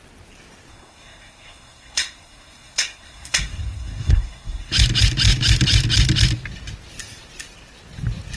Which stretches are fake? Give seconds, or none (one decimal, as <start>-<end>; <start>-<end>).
0.7-4.7